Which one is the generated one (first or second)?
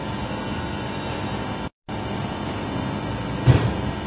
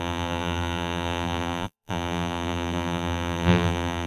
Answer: second